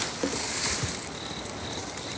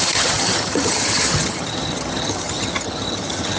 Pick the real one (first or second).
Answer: first